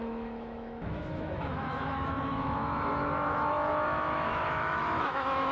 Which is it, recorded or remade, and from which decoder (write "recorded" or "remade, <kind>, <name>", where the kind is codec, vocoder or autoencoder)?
remade, autoencoder, DAC-VAE